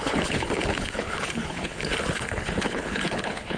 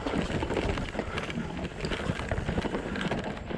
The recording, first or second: second